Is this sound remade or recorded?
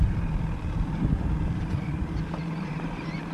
remade